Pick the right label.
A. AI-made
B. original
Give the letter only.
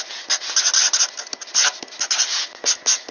B